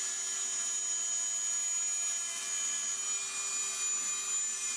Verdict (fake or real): real